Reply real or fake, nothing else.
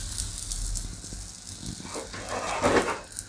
real